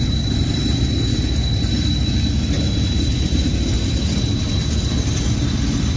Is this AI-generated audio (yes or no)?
no